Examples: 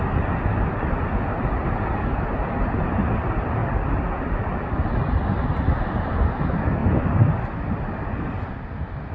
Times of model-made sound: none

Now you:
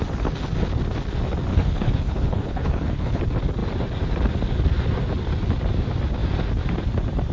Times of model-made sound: 1.5-3.2 (codec, HILCodec)